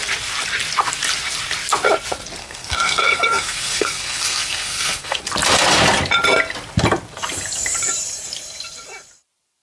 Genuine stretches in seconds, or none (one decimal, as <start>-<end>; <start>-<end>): 0.0-2.4; 5.2-9.6

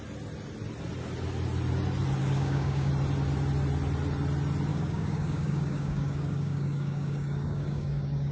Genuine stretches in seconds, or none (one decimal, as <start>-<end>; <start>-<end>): 0.0-2.2; 2.9-4.7

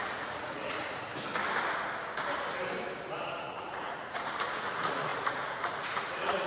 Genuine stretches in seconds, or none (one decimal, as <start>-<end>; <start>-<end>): 1.1-3.4

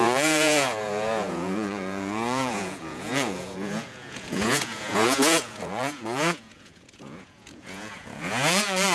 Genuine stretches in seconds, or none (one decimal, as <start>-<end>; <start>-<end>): none

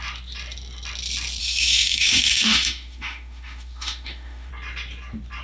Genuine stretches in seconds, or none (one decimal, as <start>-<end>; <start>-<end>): 0.0-1.4; 4.5-5.4

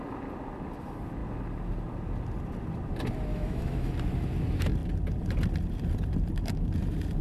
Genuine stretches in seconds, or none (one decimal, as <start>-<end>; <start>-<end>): 0.0-3.3; 3.9-7.2

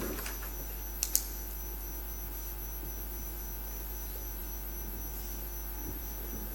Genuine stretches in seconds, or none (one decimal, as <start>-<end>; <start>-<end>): 0.0-6.5